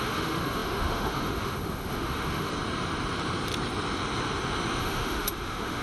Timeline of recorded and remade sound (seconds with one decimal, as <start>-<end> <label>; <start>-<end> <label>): 0.0-2.5 remade; 2.5-4.8 recorded; 4.8-5.8 remade

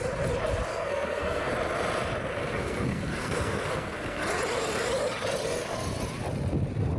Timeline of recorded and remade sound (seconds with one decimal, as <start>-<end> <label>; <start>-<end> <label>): 0.0-0.7 recorded; 0.7-1.5 remade; 1.5-2.4 recorded; 2.4-4.2 remade; 4.2-7.0 recorded

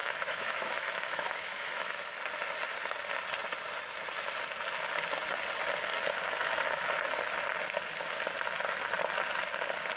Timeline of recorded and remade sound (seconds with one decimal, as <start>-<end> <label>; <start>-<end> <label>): 0.0-2.0 remade; 2.0-10.0 recorded

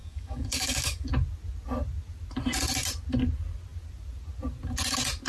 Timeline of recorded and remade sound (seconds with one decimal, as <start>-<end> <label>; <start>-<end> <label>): 0.0-1.1 remade; 1.1-5.3 recorded

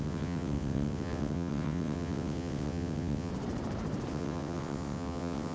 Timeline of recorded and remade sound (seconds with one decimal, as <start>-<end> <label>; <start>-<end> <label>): 0.0-3.3 remade; 3.3-4.1 recorded; 4.1-5.5 remade

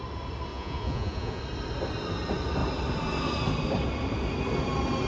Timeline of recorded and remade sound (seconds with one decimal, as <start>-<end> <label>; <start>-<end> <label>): 0.0-0.5 recorded; 0.5-1.4 remade; 1.4-5.1 recorded

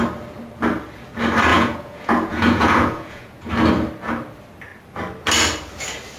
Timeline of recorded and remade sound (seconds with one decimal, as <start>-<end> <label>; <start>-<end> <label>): 0.0-1.5 recorded; 1.5-3.5 remade; 3.5-6.2 recorded